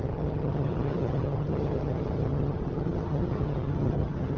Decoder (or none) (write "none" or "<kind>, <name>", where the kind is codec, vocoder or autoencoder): vocoder, HiFi-GAN